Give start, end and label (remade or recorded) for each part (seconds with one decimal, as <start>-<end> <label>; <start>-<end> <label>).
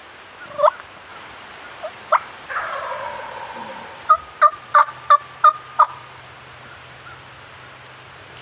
0.0-1.1 recorded; 1.1-4.1 remade; 4.1-4.8 recorded; 4.8-6.4 remade; 6.4-8.4 recorded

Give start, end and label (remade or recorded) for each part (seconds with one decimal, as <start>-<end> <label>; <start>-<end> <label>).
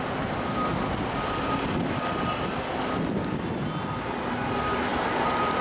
0.0-5.6 recorded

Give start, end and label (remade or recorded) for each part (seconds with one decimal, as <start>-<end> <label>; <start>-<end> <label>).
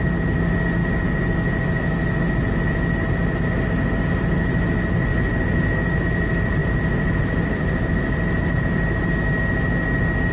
0.0-6.6 recorded; 6.6-7.9 remade; 7.9-10.3 recorded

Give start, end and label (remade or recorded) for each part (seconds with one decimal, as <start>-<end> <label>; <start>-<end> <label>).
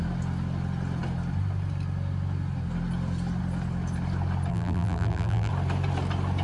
0.0-4.5 recorded; 4.5-5.5 remade; 5.5-6.4 recorded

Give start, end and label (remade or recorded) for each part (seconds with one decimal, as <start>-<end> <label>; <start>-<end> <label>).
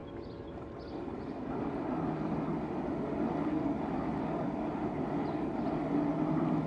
0.0-6.7 recorded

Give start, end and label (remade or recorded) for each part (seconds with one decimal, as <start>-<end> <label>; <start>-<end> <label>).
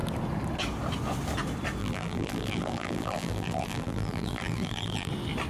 0.0-1.8 recorded; 1.8-5.1 remade; 5.1-5.5 recorded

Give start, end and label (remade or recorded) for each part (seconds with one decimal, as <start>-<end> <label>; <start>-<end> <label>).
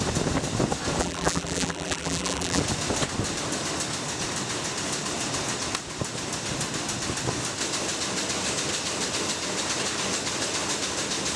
0.0-1.0 recorded; 1.0-2.6 remade; 2.6-11.4 recorded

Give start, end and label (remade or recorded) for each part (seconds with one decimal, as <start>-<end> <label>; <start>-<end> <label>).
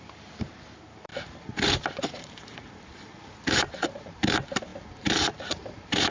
0.0-6.1 remade